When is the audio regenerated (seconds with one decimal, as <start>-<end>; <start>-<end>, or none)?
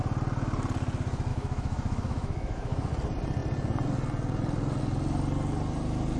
1.3-2.9